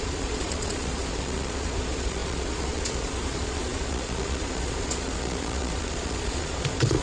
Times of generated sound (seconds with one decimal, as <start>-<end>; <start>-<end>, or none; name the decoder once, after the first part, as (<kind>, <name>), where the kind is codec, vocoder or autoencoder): 0.0-7.0 (vocoder, Vocos)